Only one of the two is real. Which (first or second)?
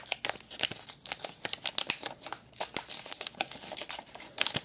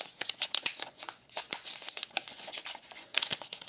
first